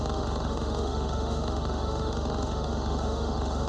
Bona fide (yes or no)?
no